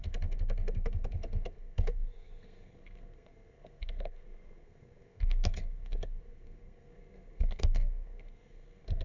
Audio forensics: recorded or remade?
remade